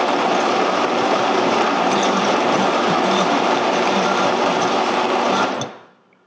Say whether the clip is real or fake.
fake